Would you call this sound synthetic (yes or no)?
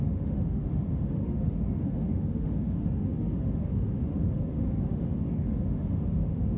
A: yes